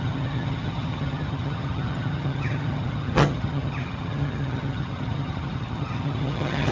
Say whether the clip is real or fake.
fake